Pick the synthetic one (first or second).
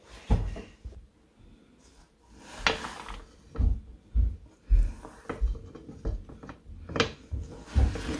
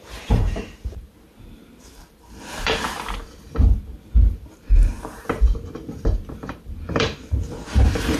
second